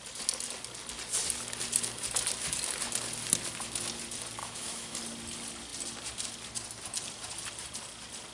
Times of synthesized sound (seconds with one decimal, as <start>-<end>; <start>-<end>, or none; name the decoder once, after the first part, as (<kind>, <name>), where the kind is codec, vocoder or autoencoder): 4.4-5.0 (autoencoder, DAC-VAE)